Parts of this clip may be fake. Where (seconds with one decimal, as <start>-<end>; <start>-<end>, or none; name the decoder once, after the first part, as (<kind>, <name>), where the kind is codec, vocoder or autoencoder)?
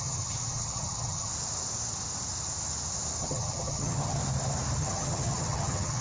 0.0-1.3 (vocoder, HiFi-GAN); 3.2-4.2; 4.8-6.0